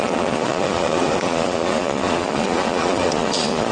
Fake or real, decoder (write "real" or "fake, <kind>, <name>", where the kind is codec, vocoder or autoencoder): fake, vocoder, Vocos